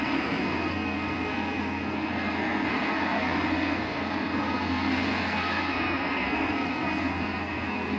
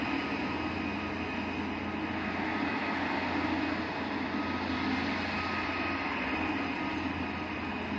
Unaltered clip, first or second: second